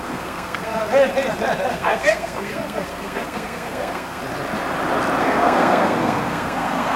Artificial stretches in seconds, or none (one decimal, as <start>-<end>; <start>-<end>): 0.0-1.1; 1.7-4.2; 5.2-7.0